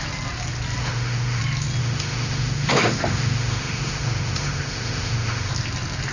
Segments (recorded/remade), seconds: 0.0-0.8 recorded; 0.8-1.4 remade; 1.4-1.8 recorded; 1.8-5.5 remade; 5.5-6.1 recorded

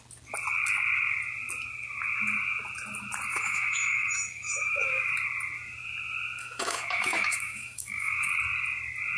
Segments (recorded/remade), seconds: 0.0-3.3 recorded; 3.3-5.1 remade; 5.1-6.4 recorded; 6.4-8.3 remade; 8.3-9.2 recorded

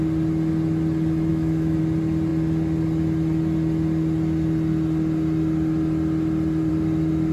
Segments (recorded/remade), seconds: 0.0-1.3 recorded; 1.3-1.8 remade; 1.8-7.3 recorded